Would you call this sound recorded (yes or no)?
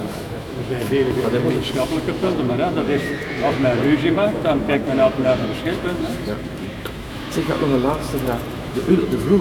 no